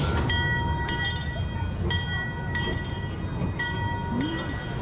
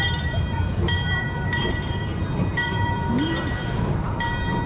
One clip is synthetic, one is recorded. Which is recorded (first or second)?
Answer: first